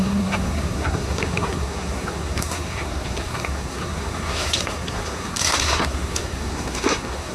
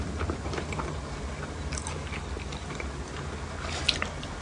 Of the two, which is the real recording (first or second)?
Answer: second